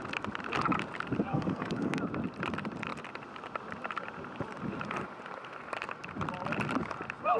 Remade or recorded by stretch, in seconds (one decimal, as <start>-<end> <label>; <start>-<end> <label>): 0.0-1.3 recorded; 1.3-2.0 remade; 2.0-7.4 recorded